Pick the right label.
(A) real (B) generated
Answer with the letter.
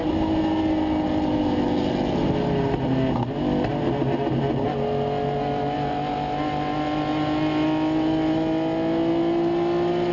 A